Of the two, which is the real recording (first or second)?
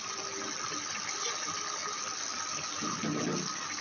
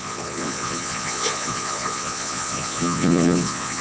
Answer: first